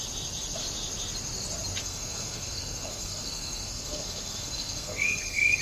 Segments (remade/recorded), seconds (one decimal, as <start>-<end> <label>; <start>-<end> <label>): 0.0-1.8 recorded; 1.8-5.6 remade